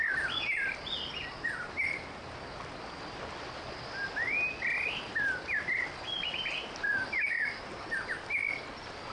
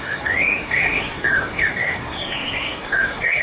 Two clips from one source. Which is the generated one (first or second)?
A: second